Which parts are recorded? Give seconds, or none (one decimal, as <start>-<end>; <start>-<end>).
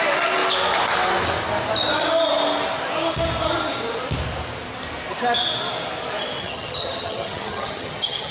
0.0-6.4